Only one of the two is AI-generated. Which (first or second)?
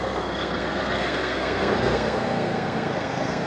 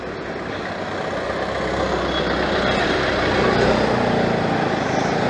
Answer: first